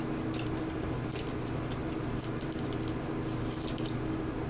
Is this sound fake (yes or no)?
no